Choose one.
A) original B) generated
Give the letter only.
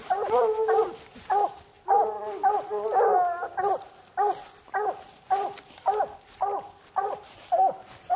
A